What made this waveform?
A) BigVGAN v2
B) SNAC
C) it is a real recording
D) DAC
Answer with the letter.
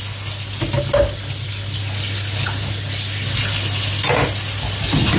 C